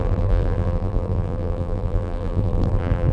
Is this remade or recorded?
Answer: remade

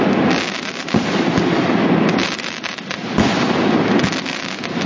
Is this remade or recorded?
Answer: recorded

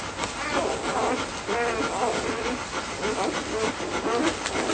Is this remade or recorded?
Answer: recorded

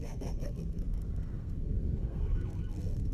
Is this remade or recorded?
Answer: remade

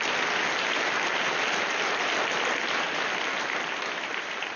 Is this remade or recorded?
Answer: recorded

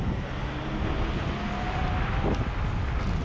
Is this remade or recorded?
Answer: recorded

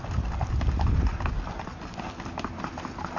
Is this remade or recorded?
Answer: recorded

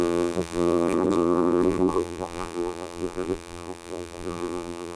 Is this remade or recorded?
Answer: remade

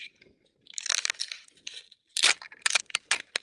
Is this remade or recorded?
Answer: recorded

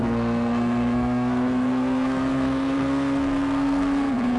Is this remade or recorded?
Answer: remade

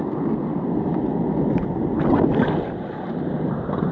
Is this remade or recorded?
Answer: recorded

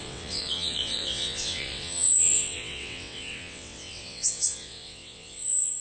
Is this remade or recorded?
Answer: remade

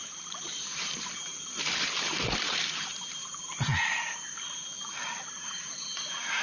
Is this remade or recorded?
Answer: remade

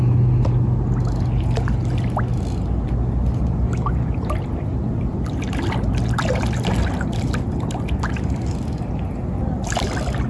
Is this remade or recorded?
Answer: recorded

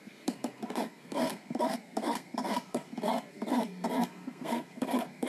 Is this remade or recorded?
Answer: remade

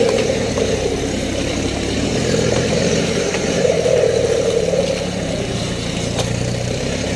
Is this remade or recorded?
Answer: remade